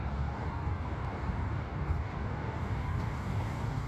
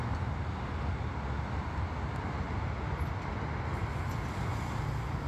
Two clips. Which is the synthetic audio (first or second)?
first